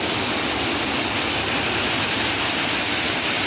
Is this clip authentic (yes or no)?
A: yes